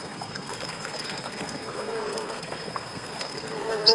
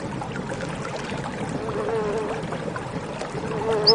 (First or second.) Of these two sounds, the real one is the second